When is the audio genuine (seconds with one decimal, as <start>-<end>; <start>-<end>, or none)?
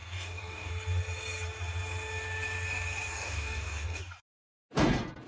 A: 0.7-3.1; 4.0-5.3